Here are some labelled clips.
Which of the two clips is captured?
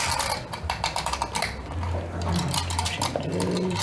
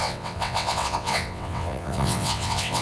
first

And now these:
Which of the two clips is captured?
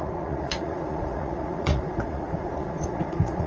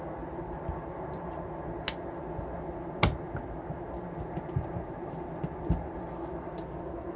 second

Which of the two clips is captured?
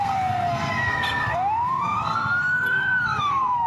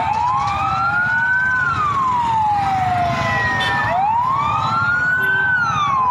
second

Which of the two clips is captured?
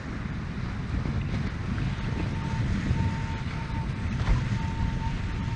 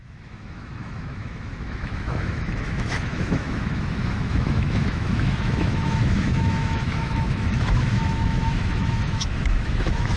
first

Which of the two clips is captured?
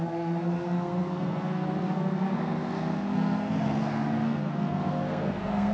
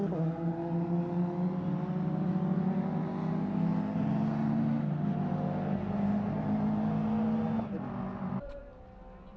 second